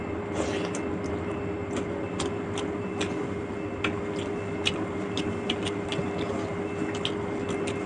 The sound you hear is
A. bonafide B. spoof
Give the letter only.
A